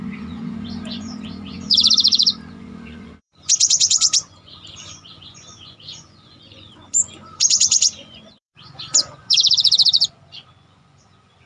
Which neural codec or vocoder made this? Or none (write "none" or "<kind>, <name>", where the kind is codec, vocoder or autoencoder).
vocoder, Vocos